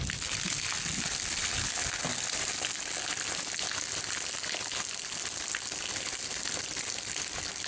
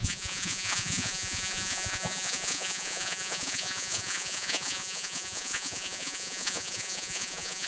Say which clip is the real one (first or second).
first